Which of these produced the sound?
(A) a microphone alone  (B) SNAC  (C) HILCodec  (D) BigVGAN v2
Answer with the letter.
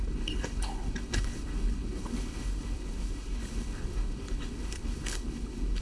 C